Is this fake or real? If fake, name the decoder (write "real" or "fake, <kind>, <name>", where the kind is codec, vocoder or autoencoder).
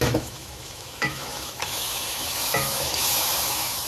fake, autoencoder, DAC-VAE